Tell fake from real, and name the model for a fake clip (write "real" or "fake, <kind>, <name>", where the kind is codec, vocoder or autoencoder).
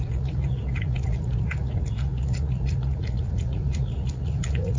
fake, vocoder, Vocos